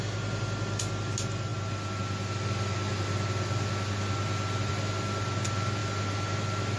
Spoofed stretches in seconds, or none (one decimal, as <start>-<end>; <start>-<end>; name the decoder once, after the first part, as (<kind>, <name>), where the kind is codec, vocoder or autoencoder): none